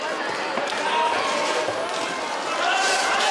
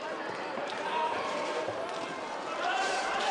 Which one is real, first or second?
first